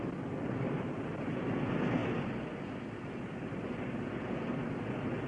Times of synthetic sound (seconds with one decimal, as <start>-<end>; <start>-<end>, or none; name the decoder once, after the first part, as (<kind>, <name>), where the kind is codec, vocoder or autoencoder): none